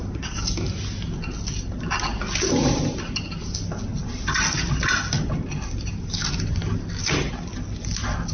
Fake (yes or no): no